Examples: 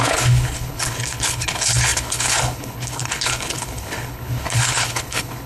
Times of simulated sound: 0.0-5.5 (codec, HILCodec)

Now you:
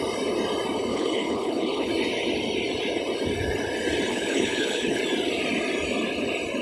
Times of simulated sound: 0.9-1.9 (codec, HILCodec); 4.1-5.0

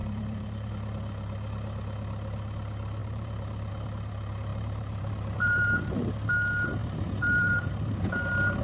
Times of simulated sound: 0.0-0.7 (vocoder, BigVGAN v2); 3.0-3.7; 4.5-6.1; 6.8-7.7

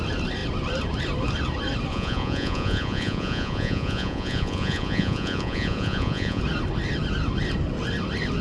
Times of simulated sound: 1.9-6.4 (vocoder, Vocos)

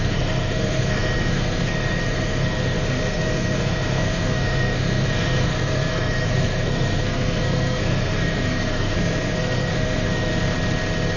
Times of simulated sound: 0.0-10.3 (codec, SNAC)

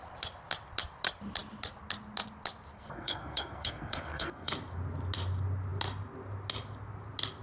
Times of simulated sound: 2.7-4.5 (codec, SNAC)

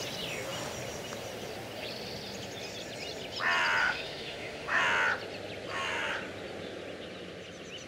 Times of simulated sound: 3.8-4.8 (autoencoder, DAC-VAE)

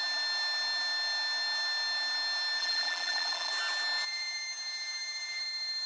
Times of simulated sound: 2.6-3.5 (vocoder, BigVGAN v2)